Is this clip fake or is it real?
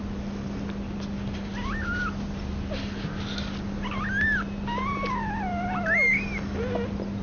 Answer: real